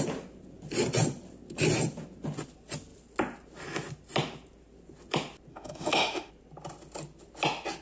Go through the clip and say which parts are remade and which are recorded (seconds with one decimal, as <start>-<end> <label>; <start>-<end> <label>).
0.0-5.5 recorded; 5.5-6.3 remade; 6.3-7.8 recorded